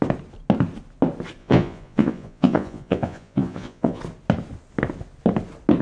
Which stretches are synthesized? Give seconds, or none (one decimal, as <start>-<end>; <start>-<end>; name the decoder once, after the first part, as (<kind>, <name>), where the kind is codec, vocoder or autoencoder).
1.4-4.0 (vocoder, Vocos)